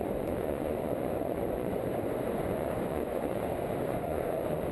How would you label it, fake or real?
fake